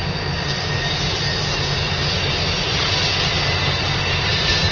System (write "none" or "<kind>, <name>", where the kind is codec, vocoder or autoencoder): none